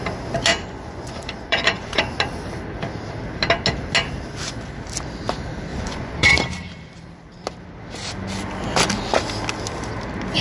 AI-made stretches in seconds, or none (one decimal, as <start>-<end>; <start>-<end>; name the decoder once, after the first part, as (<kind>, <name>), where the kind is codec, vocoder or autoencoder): 0.5-2.0 (vocoder, Vocos); 5.7-6.3